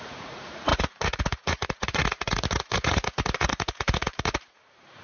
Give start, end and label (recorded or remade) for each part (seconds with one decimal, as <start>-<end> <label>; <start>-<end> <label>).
0.0-5.0 remade